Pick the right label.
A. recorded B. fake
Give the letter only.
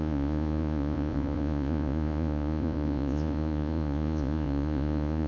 B